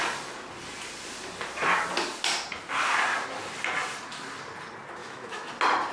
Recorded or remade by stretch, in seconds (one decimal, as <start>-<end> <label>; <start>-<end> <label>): 0.0-5.0 recorded; 5.0-5.5 remade; 5.5-5.9 recorded

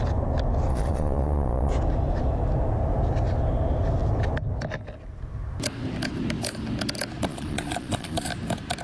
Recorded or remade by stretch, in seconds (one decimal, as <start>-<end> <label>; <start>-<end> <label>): 0.0-0.7 recorded; 0.7-1.7 remade; 1.7-7.3 recorded; 7.3-8.3 remade; 8.3-8.8 recorded

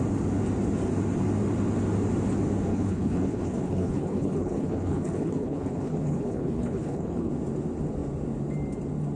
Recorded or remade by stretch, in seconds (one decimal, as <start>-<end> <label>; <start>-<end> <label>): 0.0-2.7 recorded; 2.7-7.3 remade; 7.3-9.2 recorded

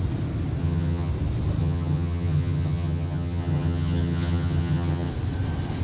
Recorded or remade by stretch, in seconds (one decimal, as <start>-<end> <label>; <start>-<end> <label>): 0.0-0.6 recorded; 0.6-1.1 remade; 1.1-1.6 recorded; 1.6-5.1 remade; 5.1-5.8 recorded

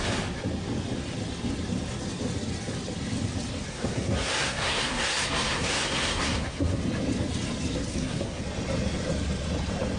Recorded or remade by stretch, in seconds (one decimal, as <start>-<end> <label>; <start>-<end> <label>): 0.0-3.7 recorded; 3.7-6.8 remade; 6.8-7.9 recorded; 7.9-8.4 remade; 8.4-10.0 recorded

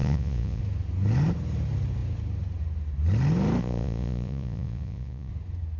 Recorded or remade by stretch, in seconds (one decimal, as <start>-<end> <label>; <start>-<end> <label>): 0.0-0.6 remade; 0.6-3.6 recorded; 3.6-5.3 remade; 5.3-5.8 recorded

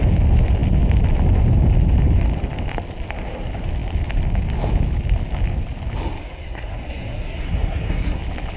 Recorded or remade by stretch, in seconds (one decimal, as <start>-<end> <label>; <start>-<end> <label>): 0.0-6.2 recorded; 6.2-8.2 remade; 8.2-8.6 recorded